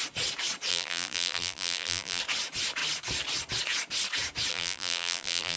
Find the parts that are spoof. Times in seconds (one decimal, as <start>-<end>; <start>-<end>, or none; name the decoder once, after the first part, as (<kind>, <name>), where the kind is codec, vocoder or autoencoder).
0.7-2.2 (vocoder, BigVGAN v2); 4.5-5.6